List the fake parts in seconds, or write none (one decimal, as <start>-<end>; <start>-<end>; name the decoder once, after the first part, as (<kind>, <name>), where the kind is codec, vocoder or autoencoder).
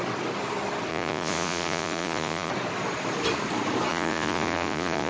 0.9-2.5 (vocoder, Vocos); 3.9-5.1